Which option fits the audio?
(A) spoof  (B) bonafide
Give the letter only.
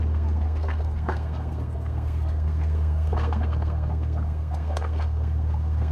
A